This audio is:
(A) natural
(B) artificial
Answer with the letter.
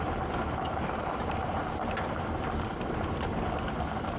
B